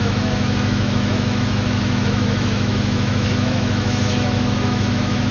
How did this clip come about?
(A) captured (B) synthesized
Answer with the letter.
B